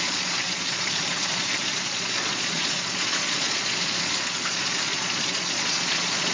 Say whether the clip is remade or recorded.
remade